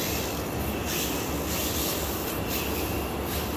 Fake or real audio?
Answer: real